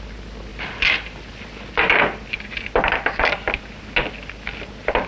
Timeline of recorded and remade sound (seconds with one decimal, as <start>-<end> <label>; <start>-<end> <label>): 0.0-0.5 recorded; 0.5-1.2 remade; 1.2-5.1 recorded